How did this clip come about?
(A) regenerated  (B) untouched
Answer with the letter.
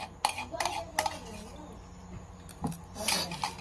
B